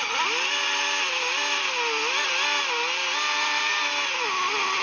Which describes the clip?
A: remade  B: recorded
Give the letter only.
B